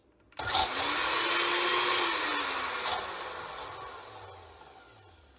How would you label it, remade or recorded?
recorded